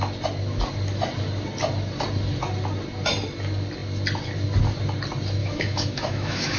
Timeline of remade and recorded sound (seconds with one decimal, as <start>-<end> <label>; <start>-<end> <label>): 0.0-5.4 recorded; 5.4-6.6 remade